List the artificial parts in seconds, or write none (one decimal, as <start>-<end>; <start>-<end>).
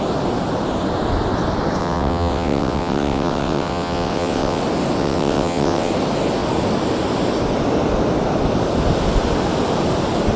1.8-4.6; 5.0-5.9